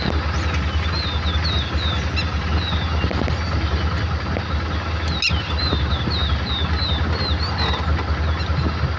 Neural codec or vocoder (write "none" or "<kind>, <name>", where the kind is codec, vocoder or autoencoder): none